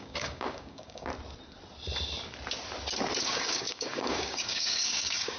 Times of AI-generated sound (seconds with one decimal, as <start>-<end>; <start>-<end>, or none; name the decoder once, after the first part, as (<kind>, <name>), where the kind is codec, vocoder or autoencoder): 0.0-1.1 (codec, DAC); 3.2-5.4